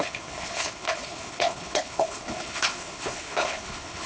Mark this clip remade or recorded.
remade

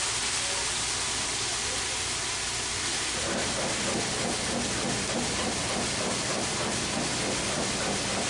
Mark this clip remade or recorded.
recorded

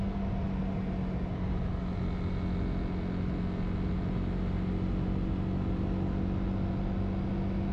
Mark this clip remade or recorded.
recorded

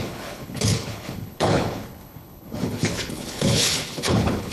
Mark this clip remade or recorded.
remade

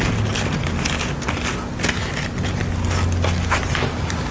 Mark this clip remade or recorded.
recorded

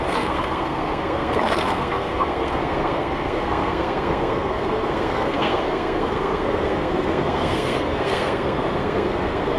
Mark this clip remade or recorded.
remade